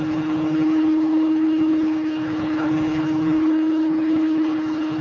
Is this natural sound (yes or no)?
no